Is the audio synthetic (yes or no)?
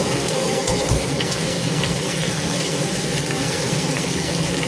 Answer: yes